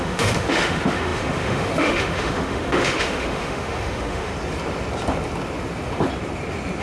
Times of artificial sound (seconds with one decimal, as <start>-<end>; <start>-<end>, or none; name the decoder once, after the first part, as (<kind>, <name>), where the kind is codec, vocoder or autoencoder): 0.0-4.3 (autoencoder, DAC-VAE)